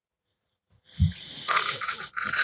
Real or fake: fake